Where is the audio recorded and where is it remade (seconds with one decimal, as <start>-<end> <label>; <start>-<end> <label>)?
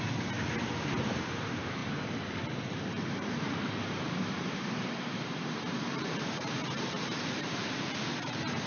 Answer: 0.0-8.7 remade